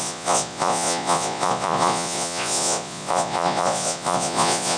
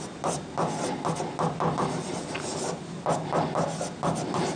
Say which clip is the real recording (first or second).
second